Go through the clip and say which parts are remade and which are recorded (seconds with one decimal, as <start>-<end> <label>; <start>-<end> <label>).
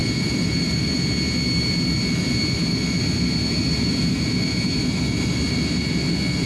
0.0-1.0 remade; 1.0-6.5 recorded